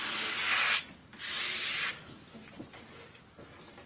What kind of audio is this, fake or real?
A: real